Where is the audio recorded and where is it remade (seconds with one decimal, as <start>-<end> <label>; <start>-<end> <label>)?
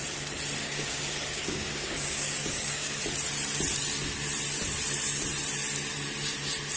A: 0.0-0.6 recorded; 0.6-3.0 remade; 3.0-6.8 recorded